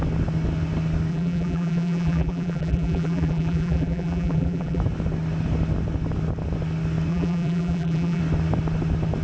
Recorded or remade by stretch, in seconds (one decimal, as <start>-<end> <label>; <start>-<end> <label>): 0.0-1.1 recorded; 1.1-4.8 remade; 4.8-7.1 recorded; 7.1-8.2 remade; 8.2-9.2 recorded